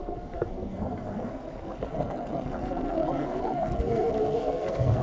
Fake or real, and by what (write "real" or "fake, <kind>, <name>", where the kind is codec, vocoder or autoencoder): fake, codec, SNAC